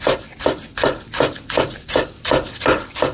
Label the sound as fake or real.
real